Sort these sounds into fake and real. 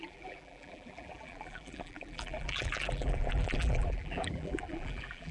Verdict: fake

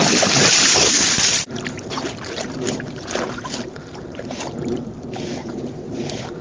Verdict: fake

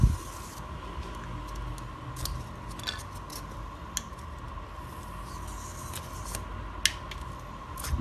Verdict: real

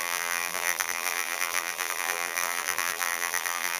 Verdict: fake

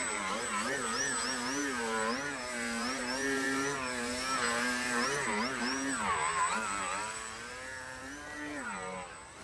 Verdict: fake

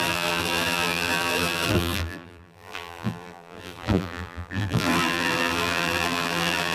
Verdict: fake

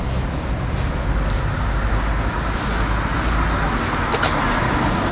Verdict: real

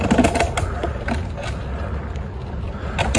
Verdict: real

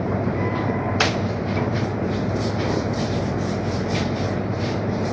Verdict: fake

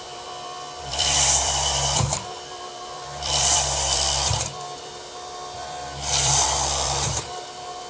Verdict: fake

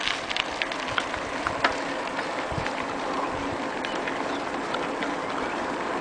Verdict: real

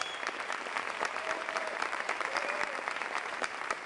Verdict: fake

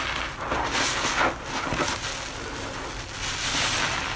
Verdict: real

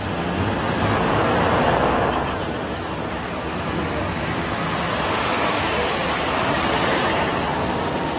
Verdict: real